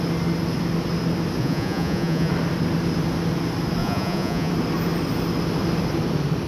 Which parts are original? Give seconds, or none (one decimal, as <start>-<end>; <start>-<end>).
0.0-1.4; 2.3-3.8; 4.5-6.5